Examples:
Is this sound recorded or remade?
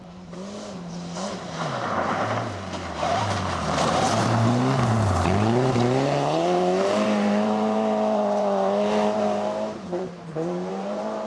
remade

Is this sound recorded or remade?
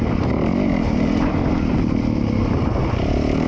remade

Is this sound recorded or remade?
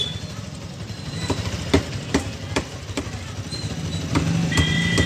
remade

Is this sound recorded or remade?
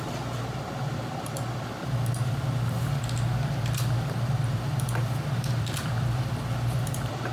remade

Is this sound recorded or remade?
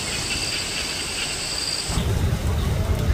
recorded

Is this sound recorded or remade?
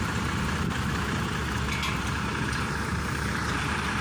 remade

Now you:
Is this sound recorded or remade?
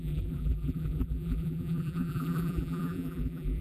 remade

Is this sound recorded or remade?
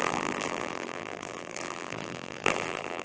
remade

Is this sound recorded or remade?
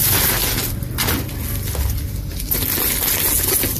recorded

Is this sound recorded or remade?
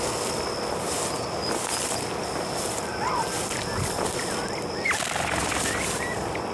recorded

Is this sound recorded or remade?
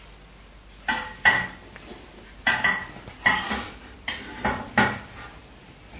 remade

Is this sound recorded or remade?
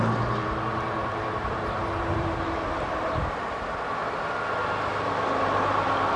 remade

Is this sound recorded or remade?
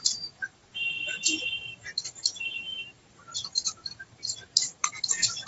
remade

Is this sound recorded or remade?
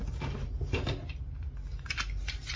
recorded